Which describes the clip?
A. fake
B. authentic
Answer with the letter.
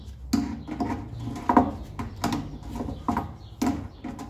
B